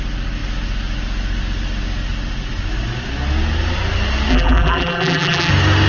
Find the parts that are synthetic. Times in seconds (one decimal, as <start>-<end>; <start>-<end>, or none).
4.3-5.5